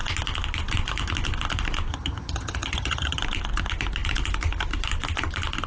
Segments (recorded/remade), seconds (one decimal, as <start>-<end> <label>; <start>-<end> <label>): 0.0-1.9 recorded; 1.9-3.2 remade; 3.2-5.7 recorded

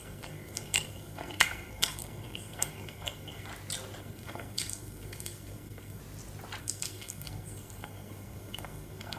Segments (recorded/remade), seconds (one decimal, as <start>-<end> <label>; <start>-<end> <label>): 0.0-3.5 remade; 3.5-4.0 recorded; 4.0-6.0 remade; 6.0-6.6 recorded; 6.6-9.2 remade